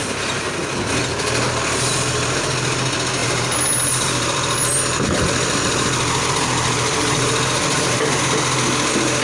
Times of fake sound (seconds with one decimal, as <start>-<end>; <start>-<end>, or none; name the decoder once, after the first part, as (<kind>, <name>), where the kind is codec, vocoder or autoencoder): 3.2-8.2 (vocoder, BigVGAN v2)